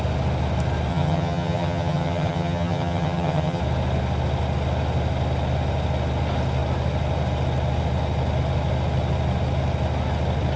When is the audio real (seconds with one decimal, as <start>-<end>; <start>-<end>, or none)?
0.0-0.9; 3.6-10.6